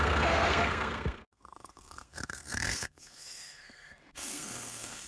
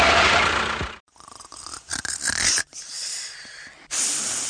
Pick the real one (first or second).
second